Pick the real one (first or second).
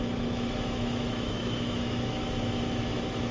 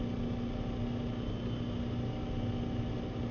second